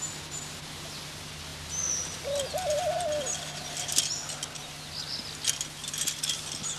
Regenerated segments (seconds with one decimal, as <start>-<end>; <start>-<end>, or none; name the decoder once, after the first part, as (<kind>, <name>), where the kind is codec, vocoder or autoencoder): none